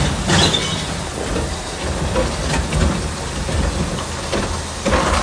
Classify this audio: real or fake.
real